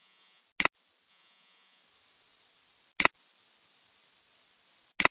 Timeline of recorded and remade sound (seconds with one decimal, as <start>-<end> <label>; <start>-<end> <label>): 0.0-0.4 remade; 0.4-1.1 recorded; 1.1-1.8 remade; 1.8-5.1 recorded